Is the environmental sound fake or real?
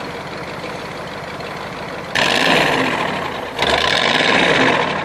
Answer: fake